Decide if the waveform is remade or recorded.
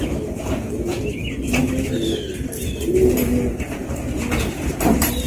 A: recorded